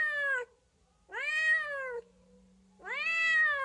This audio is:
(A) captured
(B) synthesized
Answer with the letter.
A